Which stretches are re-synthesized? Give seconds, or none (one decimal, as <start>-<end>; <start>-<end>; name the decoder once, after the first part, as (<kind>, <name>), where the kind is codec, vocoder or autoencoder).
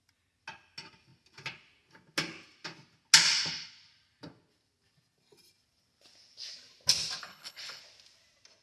7.2-7.8 (codec, HILCodec)